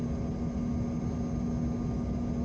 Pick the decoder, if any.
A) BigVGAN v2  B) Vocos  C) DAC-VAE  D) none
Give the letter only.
D